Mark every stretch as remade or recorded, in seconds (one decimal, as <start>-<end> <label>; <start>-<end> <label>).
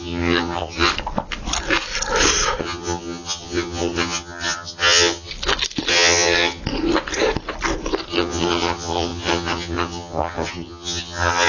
0.0-0.9 remade; 0.9-2.6 recorded; 2.6-5.3 remade; 5.3-5.9 recorded; 5.9-6.6 remade; 6.6-8.1 recorded; 8.1-11.5 remade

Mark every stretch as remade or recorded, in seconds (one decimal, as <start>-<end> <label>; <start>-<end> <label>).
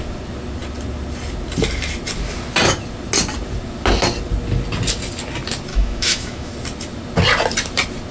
0.0-5.7 recorded; 5.7-6.5 remade; 6.5-8.1 recorded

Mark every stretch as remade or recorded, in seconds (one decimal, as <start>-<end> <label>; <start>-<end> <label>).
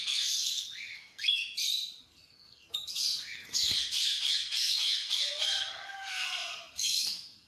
0.0-1.4 remade; 1.4-2.0 recorded; 2.0-7.5 remade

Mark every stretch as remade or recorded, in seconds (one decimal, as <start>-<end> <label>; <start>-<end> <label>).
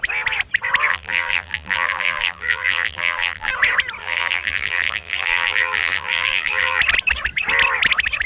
0.0-0.9 recorded; 0.9-3.5 remade; 3.5-4.0 recorded; 4.0-6.8 remade; 6.8-8.3 recorded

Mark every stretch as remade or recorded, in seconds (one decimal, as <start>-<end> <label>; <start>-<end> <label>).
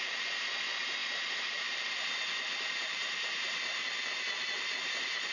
0.0-1.0 recorded; 1.0-3.9 remade; 3.9-5.3 recorded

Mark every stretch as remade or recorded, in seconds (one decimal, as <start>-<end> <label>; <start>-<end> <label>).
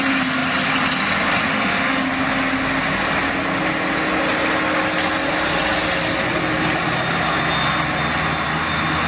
0.0-1.5 recorded; 1.5-2.0 remade; 2.0-9.1 recorded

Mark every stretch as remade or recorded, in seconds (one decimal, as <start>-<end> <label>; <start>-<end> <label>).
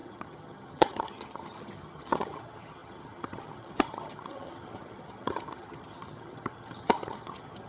0.0-7.7 remade